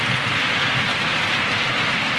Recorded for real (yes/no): no